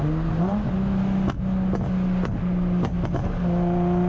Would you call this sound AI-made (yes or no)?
no